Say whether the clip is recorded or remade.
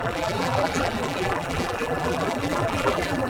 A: remade